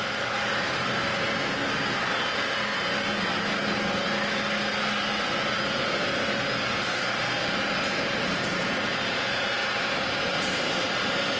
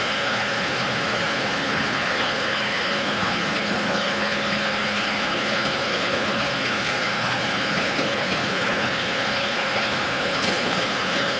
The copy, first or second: second